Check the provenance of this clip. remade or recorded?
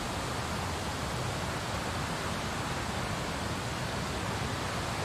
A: recorded